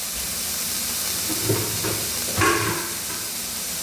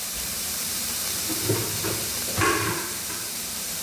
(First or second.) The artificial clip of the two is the second